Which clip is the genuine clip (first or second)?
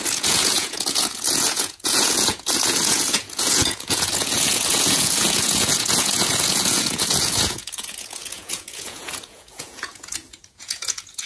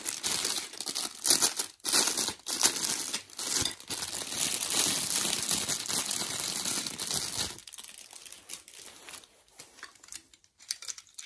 second